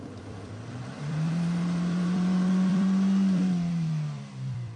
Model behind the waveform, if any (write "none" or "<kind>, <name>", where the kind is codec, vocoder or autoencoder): vocoder, BigVGAN v2